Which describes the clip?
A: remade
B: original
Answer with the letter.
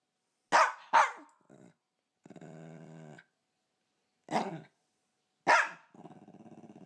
B